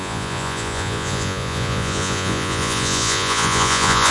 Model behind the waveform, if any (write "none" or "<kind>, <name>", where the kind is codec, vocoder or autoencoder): vocoder, Vocos